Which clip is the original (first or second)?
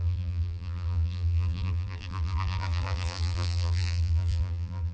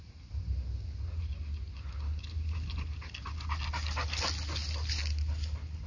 second